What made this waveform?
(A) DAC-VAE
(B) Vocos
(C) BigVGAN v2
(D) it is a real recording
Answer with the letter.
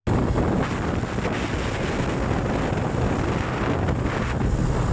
D